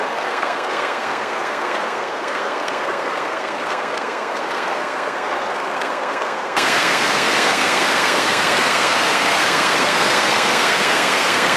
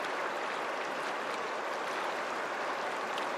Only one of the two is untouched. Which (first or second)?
second